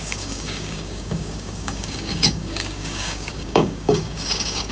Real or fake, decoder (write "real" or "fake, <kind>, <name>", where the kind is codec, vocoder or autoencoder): fake, codec, DAC